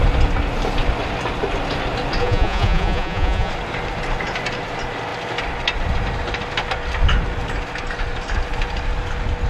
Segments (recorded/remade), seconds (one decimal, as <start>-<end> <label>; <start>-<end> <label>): 0.0-2.2 recorded; 2.2-3.5 remade; 3.5-9.5 recorded